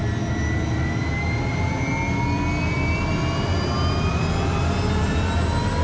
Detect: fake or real real